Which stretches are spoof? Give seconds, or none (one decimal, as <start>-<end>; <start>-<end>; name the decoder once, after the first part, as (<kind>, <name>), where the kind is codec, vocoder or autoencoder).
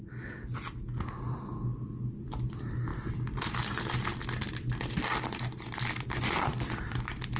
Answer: none